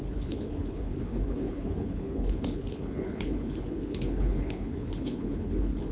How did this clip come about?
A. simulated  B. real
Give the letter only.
A